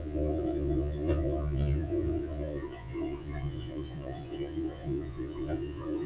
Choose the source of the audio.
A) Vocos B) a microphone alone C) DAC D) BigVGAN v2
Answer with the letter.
A